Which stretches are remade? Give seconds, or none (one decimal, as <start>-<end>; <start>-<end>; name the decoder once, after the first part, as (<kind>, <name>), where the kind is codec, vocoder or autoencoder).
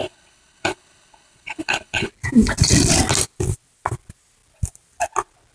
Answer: 0.0-2.1 (codec, HILCodec)